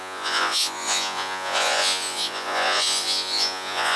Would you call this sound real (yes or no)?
no